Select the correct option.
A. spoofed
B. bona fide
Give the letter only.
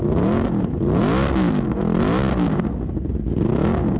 B